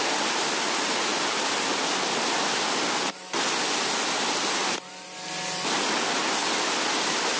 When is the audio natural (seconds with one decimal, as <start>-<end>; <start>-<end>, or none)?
0.0-7.4